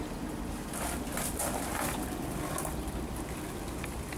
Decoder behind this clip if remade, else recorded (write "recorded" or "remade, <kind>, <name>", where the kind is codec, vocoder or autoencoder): recorded